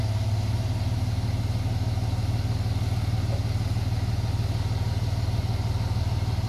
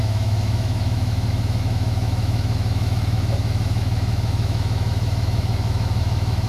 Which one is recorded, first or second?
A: first